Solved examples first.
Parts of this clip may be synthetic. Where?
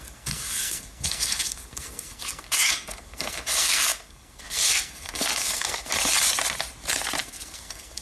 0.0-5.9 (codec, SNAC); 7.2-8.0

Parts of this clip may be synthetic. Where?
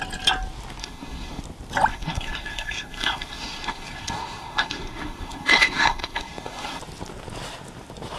0.8-1.4 (codec, SNAC); 1.9-6.8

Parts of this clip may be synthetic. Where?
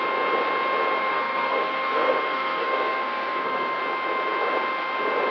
1.0-3.8 (codec, SNAC)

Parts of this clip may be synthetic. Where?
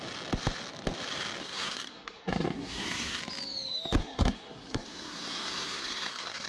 1.4-3.2 (codec, SNAC); 4.0-6.5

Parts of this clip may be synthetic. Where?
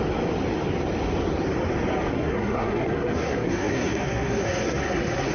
2.1-5.3 (codec, SNAC)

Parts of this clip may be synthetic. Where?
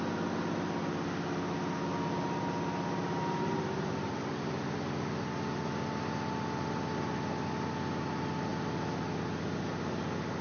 none